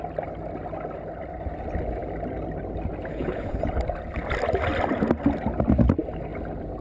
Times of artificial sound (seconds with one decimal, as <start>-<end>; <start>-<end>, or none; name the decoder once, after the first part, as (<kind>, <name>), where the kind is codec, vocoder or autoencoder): 3.1-3.6 (codec, HILCodec)